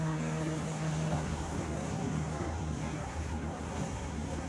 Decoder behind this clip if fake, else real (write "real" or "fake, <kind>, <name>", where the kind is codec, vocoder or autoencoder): fake, codec, SNAC